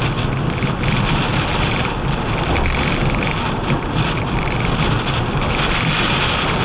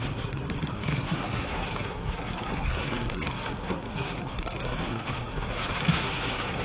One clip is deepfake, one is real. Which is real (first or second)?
first